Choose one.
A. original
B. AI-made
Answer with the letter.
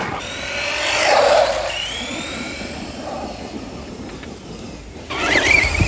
A